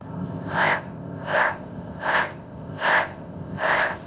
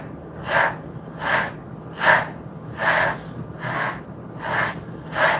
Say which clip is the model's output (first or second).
first